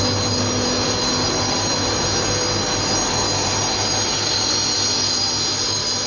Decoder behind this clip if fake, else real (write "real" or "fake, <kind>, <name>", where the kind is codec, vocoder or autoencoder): real